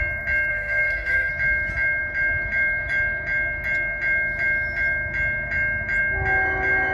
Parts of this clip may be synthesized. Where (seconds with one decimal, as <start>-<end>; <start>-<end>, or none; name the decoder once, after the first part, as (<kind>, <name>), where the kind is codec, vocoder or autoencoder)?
0.5-1.3 (codec, SNAC)